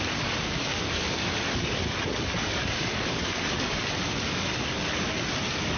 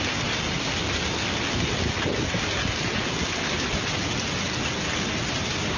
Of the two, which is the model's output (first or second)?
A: first